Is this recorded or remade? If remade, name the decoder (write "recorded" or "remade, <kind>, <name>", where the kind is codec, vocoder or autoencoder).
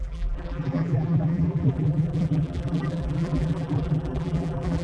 remade, vocoder, BigVGAN v2